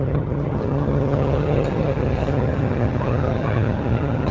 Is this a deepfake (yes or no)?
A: yes